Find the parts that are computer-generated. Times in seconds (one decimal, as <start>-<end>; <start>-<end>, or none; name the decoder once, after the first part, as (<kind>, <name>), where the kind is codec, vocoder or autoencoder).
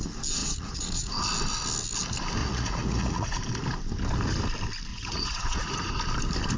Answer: 0.4-1.1 (vocoder, Vocos); 2.4-3.4; 4.9-5.9